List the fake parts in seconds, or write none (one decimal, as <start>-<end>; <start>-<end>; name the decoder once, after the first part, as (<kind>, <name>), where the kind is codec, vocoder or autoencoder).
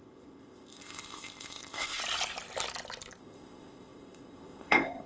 0.0-2.0 (codec, ZipCodec); 3.2-5.1